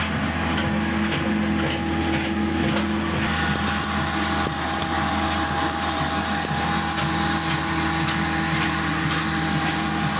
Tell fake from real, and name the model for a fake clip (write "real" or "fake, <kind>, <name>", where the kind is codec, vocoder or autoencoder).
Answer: real